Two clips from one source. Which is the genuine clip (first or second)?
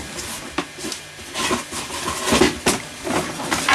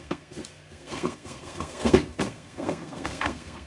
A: first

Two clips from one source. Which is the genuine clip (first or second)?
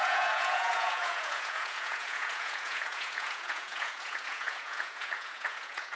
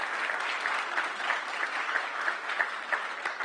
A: second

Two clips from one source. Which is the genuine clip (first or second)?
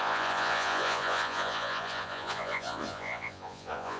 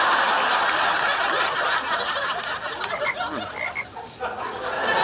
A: second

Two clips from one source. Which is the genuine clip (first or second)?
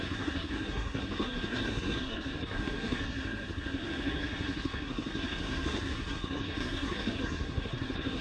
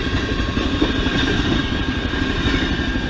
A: second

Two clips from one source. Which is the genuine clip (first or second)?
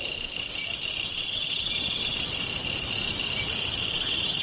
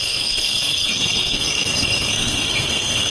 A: first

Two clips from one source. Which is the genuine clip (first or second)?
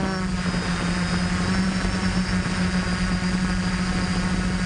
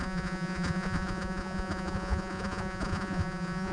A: first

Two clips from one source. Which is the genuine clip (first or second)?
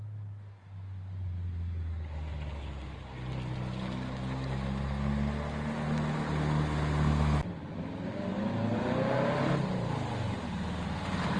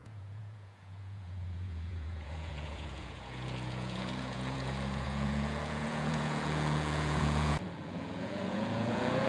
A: first